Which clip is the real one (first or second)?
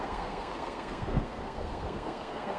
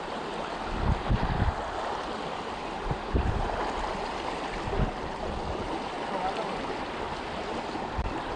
second